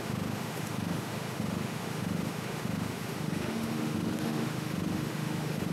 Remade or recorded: remade